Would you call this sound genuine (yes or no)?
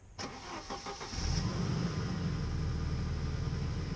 yes